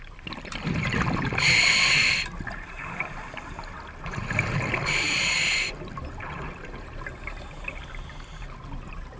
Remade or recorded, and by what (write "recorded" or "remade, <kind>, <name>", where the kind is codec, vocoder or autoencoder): recorded